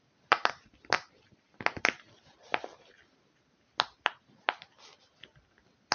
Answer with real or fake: real